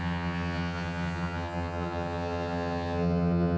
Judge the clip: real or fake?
fake